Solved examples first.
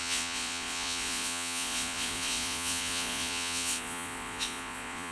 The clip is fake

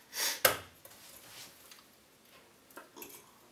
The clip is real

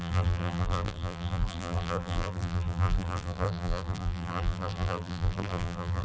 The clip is fake